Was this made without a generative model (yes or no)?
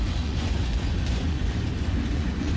no